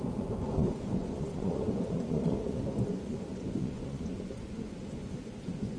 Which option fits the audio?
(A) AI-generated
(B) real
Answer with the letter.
A